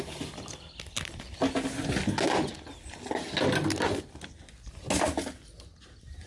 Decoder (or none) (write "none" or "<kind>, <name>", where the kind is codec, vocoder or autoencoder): none